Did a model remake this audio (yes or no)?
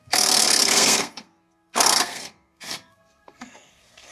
yes